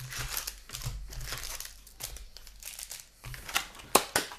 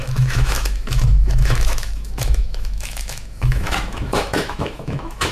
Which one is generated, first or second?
second